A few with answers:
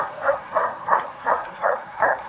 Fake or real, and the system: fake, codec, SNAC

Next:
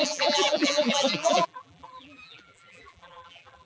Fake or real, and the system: fake, vocoder, BigVGAN v2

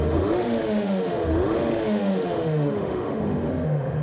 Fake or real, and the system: fake, autoencoder, DAC-VAE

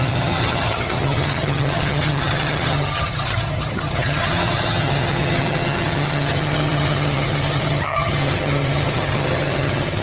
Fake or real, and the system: fake, vocoder, HiFi-GAN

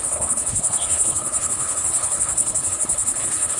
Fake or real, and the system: fake, codec, HILCodec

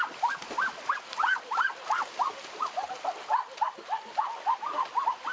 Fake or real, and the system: real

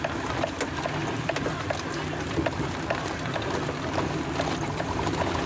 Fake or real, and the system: real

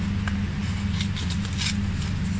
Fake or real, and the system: real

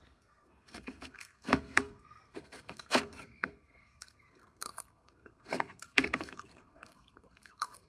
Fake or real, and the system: fake, codec, SNAC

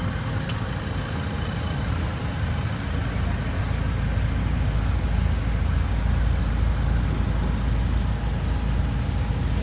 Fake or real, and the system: real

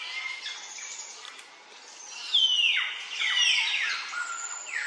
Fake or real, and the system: real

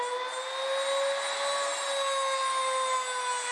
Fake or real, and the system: real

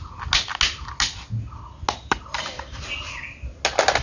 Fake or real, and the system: real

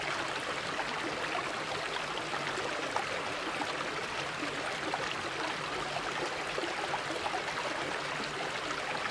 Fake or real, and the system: real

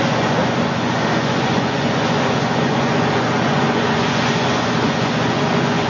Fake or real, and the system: fake, vocoder, Vocos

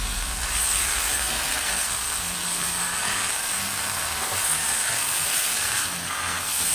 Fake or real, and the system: fake, codec, SNAC